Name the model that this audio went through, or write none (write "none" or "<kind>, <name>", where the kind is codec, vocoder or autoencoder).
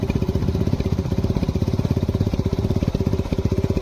vocoder, BigVGAN v2